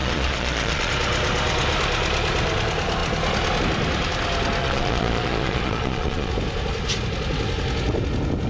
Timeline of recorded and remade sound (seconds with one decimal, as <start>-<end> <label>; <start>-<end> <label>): 0.0-0.9 remade; 0.9-4.6 recorded; 4.6-6.3 remade; 6.3-8.5 recorded